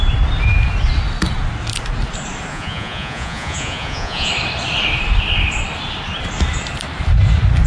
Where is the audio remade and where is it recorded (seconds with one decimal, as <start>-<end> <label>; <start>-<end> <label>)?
0.0-2.5 recorded; 2.5-4.3 remade; 4.3-7.7 recorded